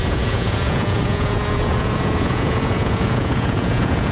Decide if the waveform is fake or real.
fake